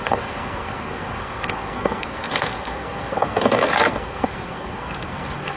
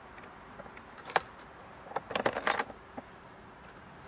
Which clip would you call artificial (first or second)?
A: first